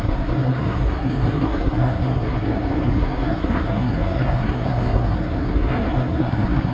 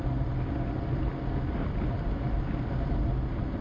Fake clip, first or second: first